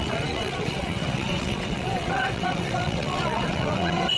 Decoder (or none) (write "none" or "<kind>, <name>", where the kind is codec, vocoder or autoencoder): vocoder, WaveNeXt